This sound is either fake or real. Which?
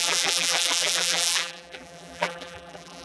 fake